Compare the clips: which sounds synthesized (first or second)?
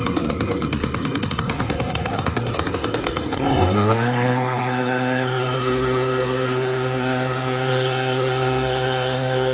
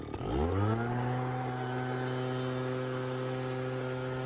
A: first